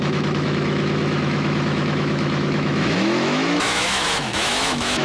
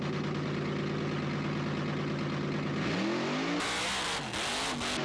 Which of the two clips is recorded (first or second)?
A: second